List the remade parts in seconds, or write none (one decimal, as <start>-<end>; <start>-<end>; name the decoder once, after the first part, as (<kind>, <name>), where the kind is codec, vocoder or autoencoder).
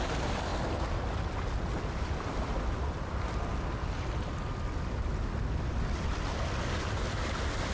none